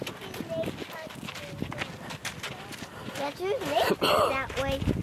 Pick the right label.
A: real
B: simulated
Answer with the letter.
A